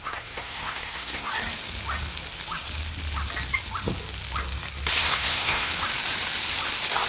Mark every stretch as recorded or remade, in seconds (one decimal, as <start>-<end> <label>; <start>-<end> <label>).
0.0-1.3 remade; 1.3-4.9 recorded; 4.9-5.7 remade; 5.7-7.1 recorded